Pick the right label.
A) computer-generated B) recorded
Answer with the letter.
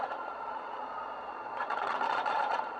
A